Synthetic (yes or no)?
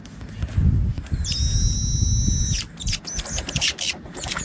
no